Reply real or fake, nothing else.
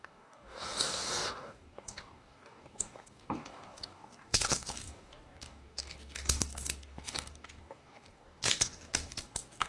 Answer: fake